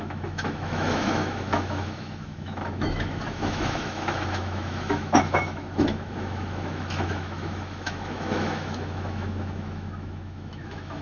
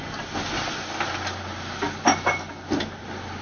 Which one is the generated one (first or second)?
first